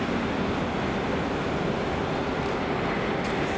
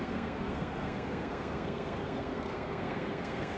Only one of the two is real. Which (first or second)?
first